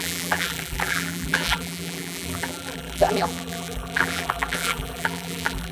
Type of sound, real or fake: fake